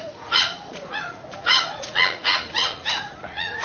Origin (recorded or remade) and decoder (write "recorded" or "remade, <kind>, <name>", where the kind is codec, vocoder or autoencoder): remade, vocoder, Vocos